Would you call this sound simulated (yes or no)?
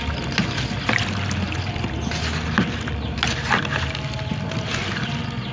no